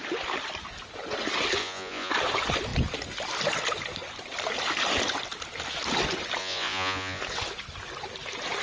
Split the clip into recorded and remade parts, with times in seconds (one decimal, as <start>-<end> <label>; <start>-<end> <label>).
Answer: 0.0-1.6 recorded; 1.6-2.1 remade; 2.1-6.4 recorded; 6.4-7.2 remade; 7.2-8.6 recorded